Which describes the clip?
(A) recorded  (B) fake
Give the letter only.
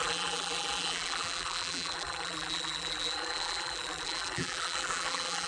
B